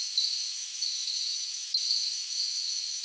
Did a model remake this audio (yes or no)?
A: yes